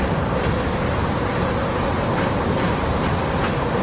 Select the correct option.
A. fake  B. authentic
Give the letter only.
B